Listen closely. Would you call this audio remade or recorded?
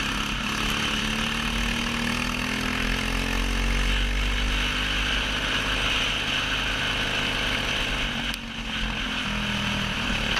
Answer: recorded